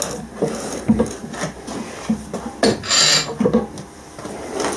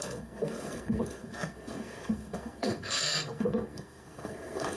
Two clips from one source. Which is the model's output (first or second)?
second